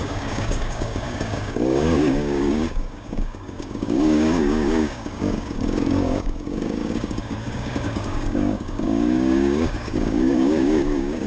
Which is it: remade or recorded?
remade